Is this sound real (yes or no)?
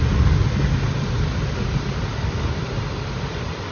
yes